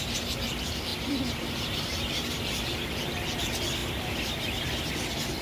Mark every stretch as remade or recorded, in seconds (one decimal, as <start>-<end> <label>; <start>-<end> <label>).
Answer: 0.0-0.9 recorded; 0.9-2.4 remade; 2.4-5.4 recorded